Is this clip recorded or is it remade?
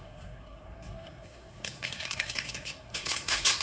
remade